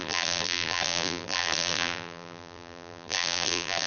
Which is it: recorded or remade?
remade